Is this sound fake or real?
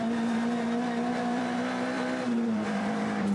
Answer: fake